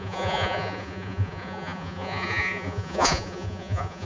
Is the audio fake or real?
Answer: fake